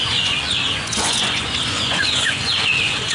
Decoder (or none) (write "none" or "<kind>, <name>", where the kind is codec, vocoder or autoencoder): vocoder, Vocos